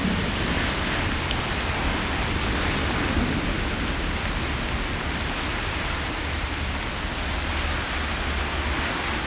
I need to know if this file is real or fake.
real